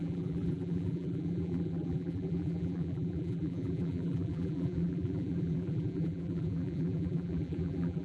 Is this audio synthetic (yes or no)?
yes